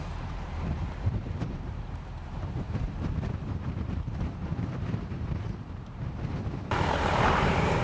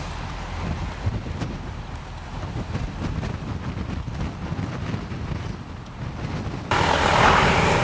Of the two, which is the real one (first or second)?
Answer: second